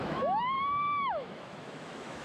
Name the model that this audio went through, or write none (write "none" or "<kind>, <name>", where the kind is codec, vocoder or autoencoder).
autoencoder, DAC-VAE